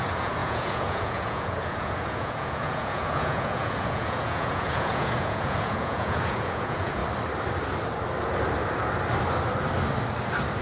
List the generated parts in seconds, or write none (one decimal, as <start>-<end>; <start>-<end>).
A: 0.0-7.0